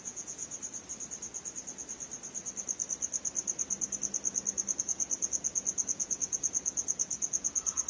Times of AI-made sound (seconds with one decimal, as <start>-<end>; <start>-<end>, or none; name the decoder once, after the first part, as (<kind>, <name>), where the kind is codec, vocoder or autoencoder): 0.0-0.4 (vocoder, Vocos); 4.8-7.9